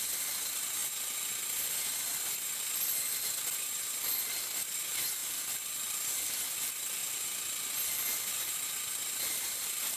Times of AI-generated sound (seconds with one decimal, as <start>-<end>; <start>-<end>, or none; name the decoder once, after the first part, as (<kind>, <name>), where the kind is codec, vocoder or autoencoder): 0.0-7.0 (vocoder, BigVGAN v2); 8.9-10.0